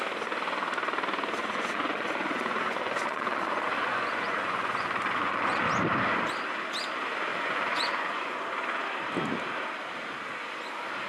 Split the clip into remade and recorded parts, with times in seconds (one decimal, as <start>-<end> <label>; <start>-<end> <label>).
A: 0.0-1.4 recorded; 1.4-5.6 remade; 5.6-7.3 recorded; 7.3-8.4 remade; 8.4-11.1 recorded